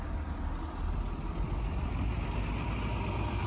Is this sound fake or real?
real